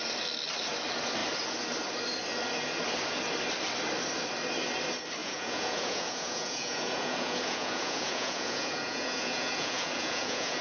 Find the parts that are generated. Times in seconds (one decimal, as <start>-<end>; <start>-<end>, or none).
5.2-10.6

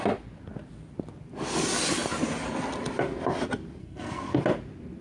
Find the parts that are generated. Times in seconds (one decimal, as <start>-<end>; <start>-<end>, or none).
3.8-4.4

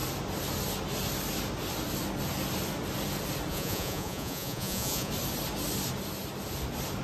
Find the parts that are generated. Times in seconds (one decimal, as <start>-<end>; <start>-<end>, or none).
3.5-5.1

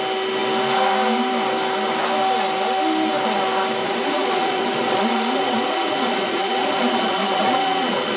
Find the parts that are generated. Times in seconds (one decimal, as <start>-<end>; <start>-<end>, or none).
3.8-8.2

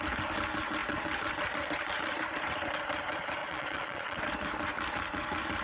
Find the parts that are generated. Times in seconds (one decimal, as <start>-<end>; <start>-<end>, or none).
3.4-4.2

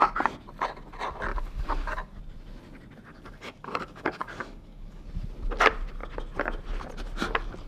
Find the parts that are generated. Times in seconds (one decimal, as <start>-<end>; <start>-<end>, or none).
1.3-2.2; 3.1-5.1